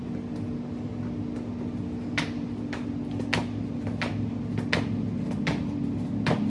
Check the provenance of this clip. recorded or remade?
recorded